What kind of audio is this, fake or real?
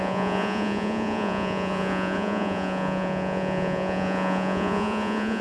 fake